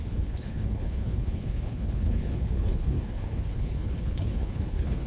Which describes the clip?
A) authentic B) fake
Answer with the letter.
B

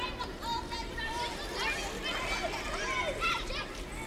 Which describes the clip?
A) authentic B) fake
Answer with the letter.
A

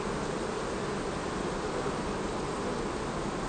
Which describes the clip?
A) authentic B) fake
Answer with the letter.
A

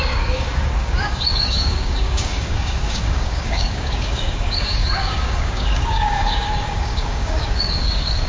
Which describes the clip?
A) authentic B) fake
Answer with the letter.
B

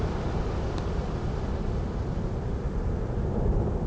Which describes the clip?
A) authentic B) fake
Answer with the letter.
A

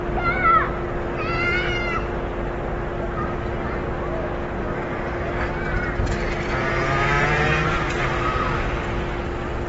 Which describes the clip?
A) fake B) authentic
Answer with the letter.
B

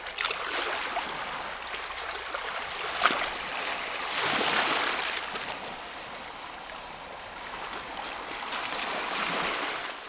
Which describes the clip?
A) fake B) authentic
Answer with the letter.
B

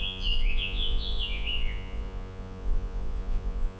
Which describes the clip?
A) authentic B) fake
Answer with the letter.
B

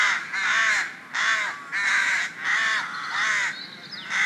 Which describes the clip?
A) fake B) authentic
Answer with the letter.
B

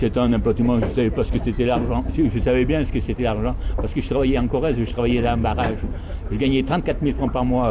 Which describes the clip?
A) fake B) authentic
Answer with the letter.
B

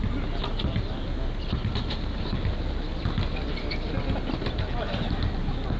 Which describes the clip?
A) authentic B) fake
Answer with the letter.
A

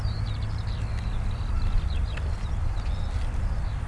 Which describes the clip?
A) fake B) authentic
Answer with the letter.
B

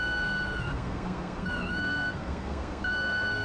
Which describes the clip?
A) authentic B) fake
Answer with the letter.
B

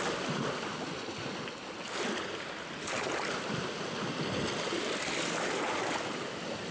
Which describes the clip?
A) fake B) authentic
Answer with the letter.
B